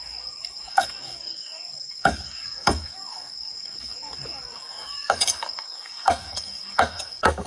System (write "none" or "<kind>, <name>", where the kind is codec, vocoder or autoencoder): codec, DAC